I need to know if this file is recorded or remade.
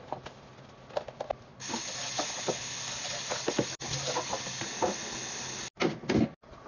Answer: recorded